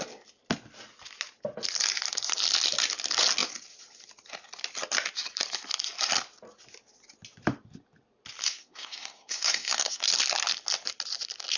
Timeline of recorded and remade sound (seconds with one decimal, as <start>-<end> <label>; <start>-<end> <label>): 0.0-8.4 recorded; 8.4-10.1 remade; 10.1-11.6 recorded